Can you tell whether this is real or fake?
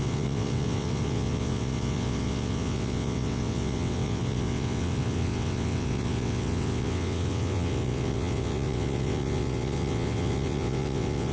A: fake